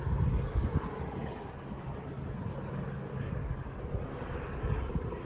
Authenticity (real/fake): real